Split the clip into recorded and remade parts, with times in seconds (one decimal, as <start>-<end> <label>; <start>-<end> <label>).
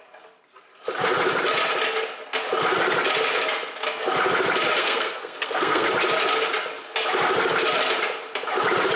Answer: 0.0-4.8 recorded; 4.8-5.9 remade; 5.9-9.0 recorded